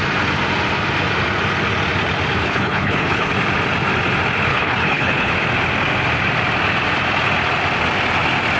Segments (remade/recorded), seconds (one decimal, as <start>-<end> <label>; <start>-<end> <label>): 0.0-2.4 recorded; 2.4-3.3 remade; 3.3-4.5 recorded; 4.5-5.3 remade; 5.3-8.6 recorded